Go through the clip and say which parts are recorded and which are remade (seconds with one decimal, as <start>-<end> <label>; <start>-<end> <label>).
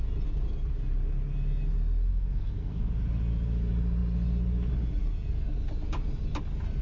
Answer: 0.0-2.1 recorded; 2.1-2.9 remade; 2.9-6.8 recorded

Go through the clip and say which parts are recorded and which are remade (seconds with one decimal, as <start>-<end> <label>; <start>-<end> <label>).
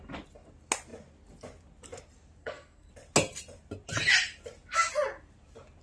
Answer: 0.0-2.4 recorded; 2.4-2.9 remade; 2.9-5.8 recorded